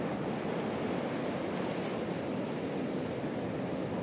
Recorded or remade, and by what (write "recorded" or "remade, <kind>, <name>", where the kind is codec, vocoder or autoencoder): recorded